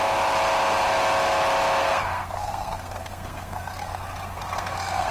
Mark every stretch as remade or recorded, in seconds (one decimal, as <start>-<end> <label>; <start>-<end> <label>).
0.0-1.8 recorded; 1.8-5.1 remade